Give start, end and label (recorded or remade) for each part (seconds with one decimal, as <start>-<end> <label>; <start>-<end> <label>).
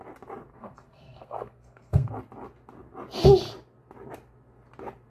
0.0-0.5 recorded; 0.5-2.1 remade; 2.1-5.1 recorded